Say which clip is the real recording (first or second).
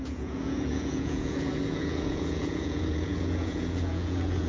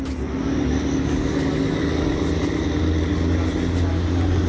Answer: second